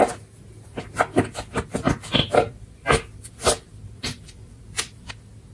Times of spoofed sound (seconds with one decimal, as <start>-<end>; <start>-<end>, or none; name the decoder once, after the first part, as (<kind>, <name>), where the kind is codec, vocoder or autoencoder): 2.2-5.1 (vocoder, BigVGAN v2)